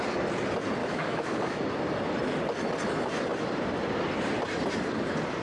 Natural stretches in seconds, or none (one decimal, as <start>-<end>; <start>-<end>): 0.0-0.8; 1.6-5.4